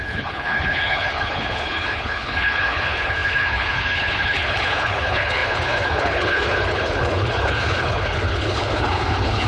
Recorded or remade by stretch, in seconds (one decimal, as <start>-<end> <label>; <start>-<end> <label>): 0.0-9.5 remade